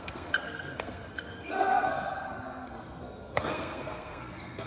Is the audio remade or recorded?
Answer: remade